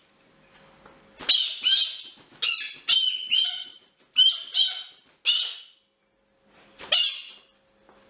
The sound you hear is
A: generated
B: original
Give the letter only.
B